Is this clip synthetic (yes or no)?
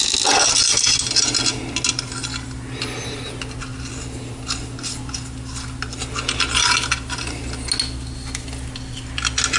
no